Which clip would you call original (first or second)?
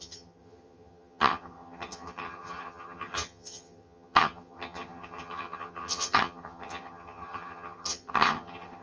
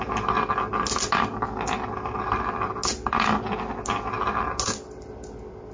second